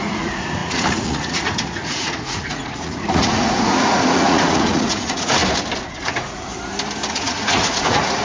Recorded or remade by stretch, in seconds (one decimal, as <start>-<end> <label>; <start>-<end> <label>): 0.0-5.4 remade; 5.4-5.9 recorded; 5.9-6.5 remade; 6.5-7.1 recorded; 7.1-8.2 remade